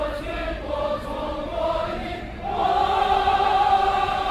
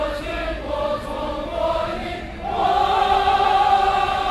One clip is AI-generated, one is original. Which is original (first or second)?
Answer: second